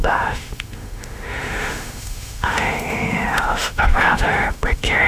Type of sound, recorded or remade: remade